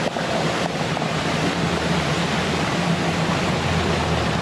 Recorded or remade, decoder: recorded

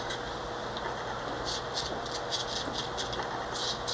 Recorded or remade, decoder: recorded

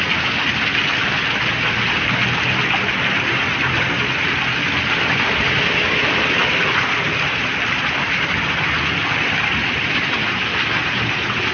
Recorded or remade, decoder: recorded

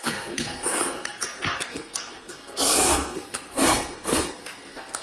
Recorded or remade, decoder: remade, codec, SNAC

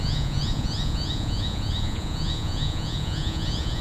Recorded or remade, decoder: remade, vocoder, Vocos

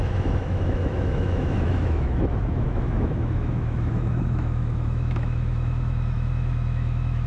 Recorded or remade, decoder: remade, autoencoder, DAC-VAE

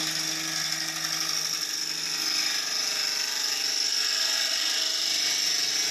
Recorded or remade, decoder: recorded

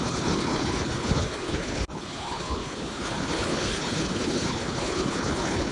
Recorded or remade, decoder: remade, codec, HILCodec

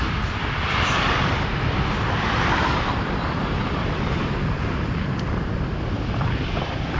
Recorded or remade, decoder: remade, vocoder, BigVGAN v2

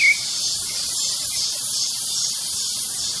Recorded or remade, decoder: recorded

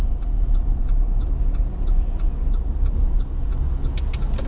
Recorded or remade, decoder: recorded